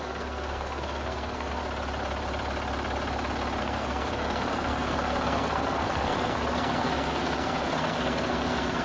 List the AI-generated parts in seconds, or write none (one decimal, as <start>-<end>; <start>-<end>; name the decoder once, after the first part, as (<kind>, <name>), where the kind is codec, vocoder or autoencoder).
0.0-1.6 (codec, SNAC); 3.6-8.8